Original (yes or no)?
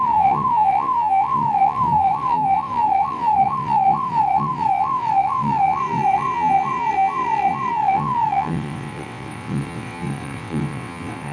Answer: no